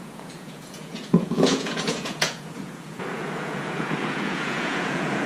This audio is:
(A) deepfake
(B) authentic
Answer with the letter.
A